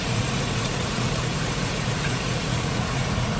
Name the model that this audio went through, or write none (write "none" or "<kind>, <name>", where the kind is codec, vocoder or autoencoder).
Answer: vocoder, Vocos